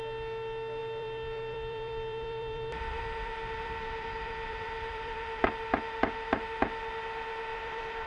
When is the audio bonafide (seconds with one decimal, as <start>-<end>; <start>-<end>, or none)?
0.0-0.8; 5.4-7.5